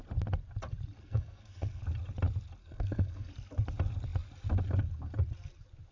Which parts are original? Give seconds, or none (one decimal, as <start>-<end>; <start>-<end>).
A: 0.0-1.0; 1.8-2.6; 3.3-5.9